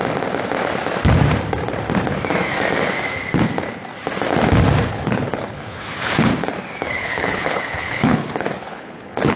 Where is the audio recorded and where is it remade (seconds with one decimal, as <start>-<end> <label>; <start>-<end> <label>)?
0.0-4.9 recorded; 4.9-6.3 remade; 6.3-6.9 recorded; 6.9-9.4 remade